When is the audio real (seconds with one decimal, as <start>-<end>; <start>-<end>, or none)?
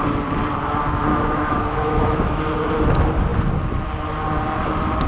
0.0-1.1; 2.4-5.1